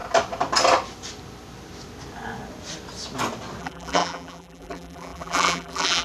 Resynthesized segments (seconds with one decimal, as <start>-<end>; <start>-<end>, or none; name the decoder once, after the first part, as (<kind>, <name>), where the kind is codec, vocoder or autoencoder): 3.6-6.0 (vocoder, BigVGAN v2)